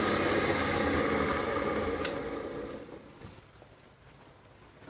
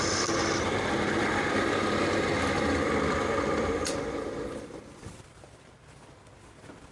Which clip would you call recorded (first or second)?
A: first